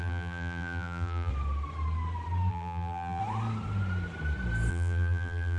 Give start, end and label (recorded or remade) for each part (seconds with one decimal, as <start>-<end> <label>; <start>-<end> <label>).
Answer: 0.0-1.3 remade; 1.3-2.5 recorded; 2.5-3.2 remade; 3.2-4.7 recorded; 4.7-5.6 remade